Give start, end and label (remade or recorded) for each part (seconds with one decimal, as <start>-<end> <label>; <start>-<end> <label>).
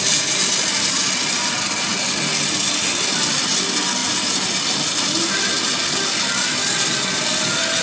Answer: 0.0-7.8 recorded